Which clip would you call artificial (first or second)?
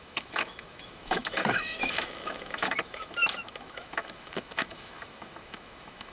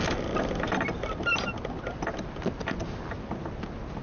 first